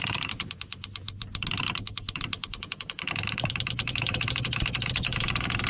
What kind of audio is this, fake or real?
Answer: fake